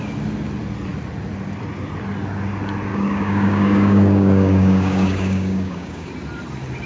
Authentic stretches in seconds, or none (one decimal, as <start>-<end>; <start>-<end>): 0.0-2.9; 6.1-6.9